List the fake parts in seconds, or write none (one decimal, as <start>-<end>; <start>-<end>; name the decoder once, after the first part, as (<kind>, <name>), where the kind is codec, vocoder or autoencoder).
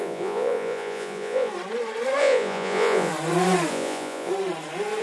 0.0-1.5 (vocoder, Vocos); 2.2-3.1; 3.7-4.3